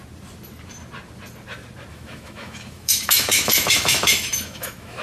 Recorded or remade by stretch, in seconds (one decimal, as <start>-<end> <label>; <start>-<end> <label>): 0.0-1.9 recorded; 1.9-5.0 remade